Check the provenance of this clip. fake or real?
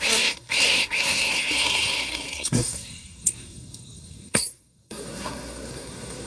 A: fake